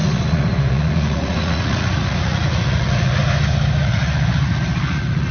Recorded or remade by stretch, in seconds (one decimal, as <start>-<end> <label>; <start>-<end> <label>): 0.0-3.2 remade; 3.2-3.8 recorded; 3.8-5.3 remade